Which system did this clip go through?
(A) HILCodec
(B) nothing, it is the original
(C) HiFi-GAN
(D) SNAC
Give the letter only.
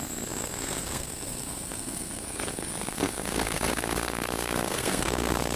D